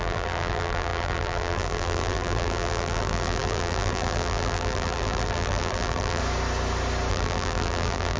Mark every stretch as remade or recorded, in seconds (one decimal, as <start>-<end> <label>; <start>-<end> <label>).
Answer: 0.0-6.2 remade; 6.2-7.1 recorded; 7.1-8.2 remade